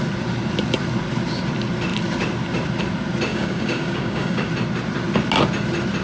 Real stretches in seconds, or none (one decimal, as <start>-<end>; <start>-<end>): 0.0-3.3; 4.5-6.0